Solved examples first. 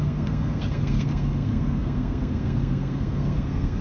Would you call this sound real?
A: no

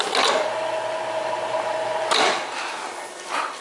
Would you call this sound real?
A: yes